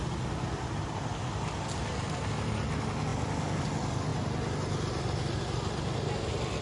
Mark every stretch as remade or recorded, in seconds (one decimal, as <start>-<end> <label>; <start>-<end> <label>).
0.0-6.6 recorded